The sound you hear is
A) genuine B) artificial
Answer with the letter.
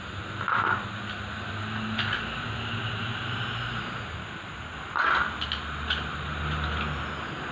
A